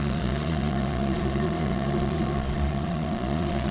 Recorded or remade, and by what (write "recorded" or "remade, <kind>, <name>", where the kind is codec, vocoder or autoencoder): remade, vocoder, Vocos